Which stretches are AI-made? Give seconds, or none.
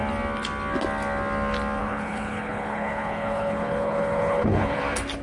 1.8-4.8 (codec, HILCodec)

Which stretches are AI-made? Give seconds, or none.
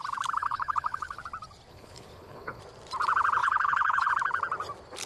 0.4-1.2 (codec, HILCodec); 1.7-2.6; 3.4-4.1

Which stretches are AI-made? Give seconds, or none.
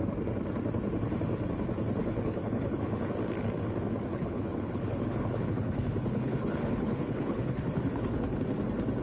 2.0-3.1 (codec, HILCodec); 4.1-8.4